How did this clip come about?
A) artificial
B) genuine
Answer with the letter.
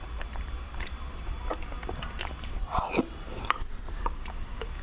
A